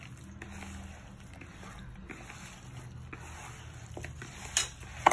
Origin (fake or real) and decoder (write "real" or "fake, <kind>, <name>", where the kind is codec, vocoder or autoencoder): real